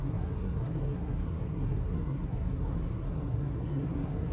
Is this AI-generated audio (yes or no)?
yes